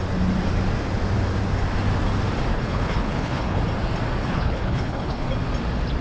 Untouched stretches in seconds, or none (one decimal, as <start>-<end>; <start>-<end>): 0.0-2.5; 3.6-4.2; 5.3-6.0